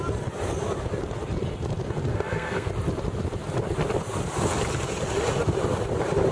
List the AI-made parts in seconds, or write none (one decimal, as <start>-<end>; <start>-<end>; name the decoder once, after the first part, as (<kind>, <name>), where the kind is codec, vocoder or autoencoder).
2.1-2.7 (codec, SNAC)